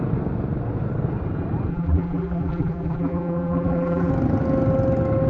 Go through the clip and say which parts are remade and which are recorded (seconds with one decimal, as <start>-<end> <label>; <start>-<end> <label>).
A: 0.0-1.7 recorded; 1.7-4.1 remade; 4.1-5.3 recorded

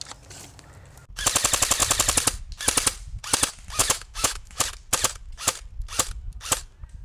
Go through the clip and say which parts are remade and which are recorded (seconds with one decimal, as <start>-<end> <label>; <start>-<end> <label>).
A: 0.0-3.8 recorded; 3.8-4.6 remade; 4.6-7.0 recorded

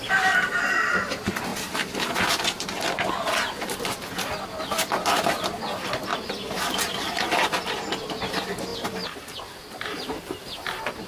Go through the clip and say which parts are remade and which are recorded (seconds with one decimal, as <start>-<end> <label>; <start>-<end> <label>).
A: 0.0-6.1 recorded; 6.1-8.1 remade; 8.1-8.7 recorded; 8.7-10.2 remade; 10.2-11.1 recorded

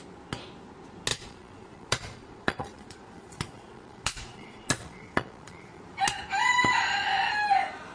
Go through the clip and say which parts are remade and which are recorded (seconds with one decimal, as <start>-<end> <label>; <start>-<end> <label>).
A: 0.0-1.1 recorded; 1.1-5.8 remade; 5.8-7.9 recorded

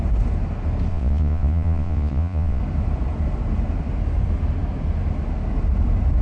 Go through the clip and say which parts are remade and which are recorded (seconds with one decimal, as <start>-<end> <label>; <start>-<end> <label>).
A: 0.0-0.9 recorded; 0.9-2.6 remade; 2.6-6.2 recorded

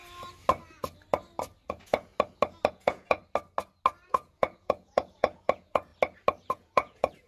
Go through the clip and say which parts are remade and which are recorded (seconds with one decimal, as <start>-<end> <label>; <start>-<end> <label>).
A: 0.0-1.7 recorded; 1.7-2.1 remade; 2.1-2.7 recorded; 2.7-3.2 remade; 3.2-4.1 recorded; 4.1-5.9 remade; 5.9-6.5 recorded; 6.5-7.3 remade